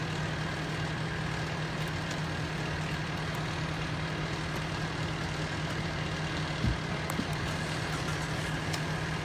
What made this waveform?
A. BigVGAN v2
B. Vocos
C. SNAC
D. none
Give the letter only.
D